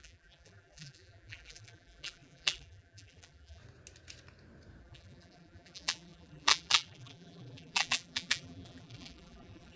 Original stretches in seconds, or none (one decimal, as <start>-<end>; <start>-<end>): 3.6-4.8